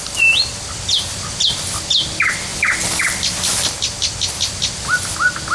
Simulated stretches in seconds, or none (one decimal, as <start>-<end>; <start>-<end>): none